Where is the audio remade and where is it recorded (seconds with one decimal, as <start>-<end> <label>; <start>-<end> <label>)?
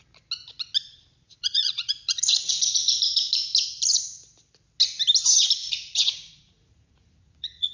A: 0.0-0.8 recorded; 0.8-3.5 remade; 3.5-5.4 recorded; 5.4-7.7 remade